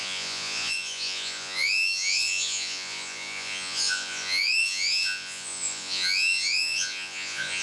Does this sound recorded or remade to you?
remade